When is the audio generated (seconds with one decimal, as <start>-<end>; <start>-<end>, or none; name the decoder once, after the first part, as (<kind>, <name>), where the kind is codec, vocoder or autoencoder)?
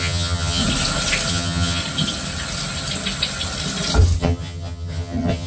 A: 0.0-0.6 (vocoder, HiFi-GAN); 1.3-1.8; 4.2-5.5